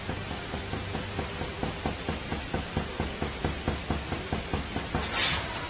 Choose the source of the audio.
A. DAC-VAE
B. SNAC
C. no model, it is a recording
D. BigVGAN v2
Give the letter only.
C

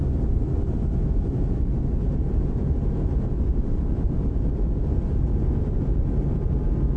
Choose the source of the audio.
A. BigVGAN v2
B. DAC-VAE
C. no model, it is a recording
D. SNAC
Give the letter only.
C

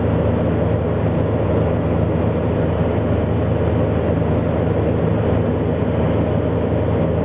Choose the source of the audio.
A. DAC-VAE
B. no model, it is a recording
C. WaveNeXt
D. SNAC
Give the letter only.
B